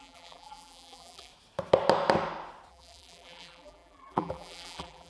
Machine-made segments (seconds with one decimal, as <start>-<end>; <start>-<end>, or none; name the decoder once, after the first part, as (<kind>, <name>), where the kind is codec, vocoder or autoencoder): 0.0-1.3 (vocoder, BigVGAN v2); 2.7-5.1